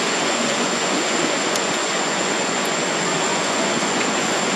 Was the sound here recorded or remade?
remade